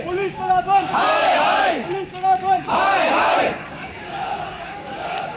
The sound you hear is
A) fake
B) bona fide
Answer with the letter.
A